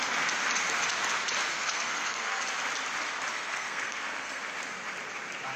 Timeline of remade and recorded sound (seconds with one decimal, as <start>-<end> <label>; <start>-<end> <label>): 0.0-1.5 recorded; 1.5-2.4 remade; 2.4-3.3 recorded; 3.3-4.4 remade; 4.4-5.6 recorded